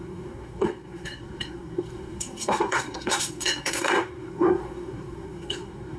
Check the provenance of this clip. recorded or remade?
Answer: remade